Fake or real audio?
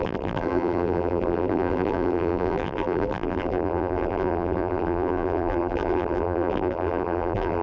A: fake